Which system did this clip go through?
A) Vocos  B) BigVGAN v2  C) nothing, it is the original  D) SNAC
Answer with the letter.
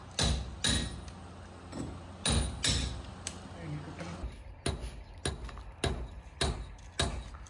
C